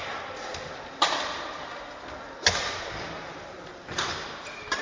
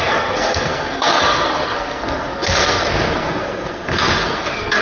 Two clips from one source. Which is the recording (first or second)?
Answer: first